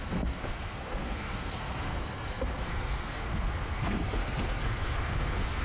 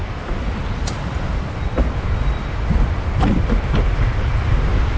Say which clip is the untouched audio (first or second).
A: second